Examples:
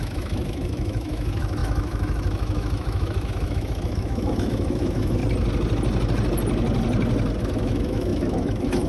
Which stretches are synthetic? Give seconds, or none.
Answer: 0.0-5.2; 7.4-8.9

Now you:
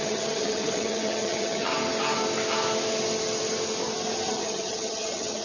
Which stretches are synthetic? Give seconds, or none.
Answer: 0.0-1.7; 4.3-5.4